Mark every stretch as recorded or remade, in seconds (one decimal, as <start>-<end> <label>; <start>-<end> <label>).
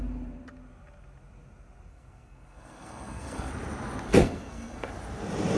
0.0-1.9 recorded; 1.9-3.5 remade; 3.5-4.1 recorded; 4.1-4.9 remade; 4.9-5.6 recorded